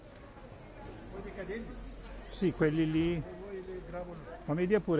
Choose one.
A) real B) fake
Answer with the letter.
A